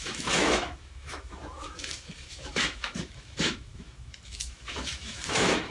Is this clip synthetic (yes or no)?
yes